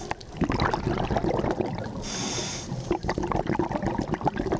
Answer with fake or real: real